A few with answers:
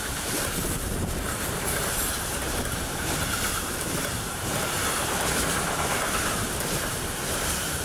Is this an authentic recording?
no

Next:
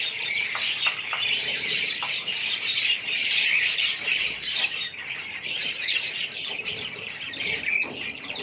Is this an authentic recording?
no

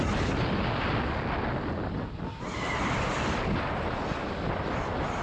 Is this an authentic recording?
yes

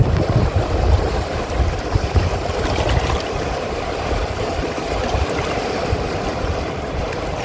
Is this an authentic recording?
no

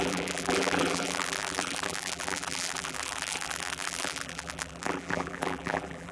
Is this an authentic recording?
no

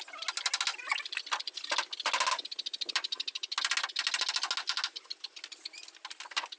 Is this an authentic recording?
yes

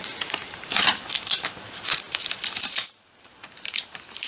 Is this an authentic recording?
no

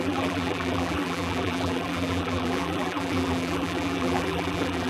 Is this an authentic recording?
no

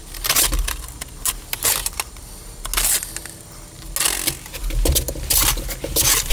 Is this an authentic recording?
yes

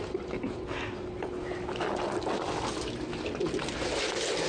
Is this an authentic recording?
yes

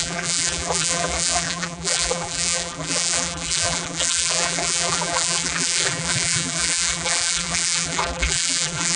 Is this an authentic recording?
no